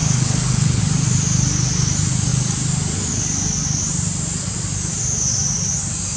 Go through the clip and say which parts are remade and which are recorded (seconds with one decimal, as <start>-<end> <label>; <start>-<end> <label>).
0.0-0.8 remade; 0.8-6.2 recorded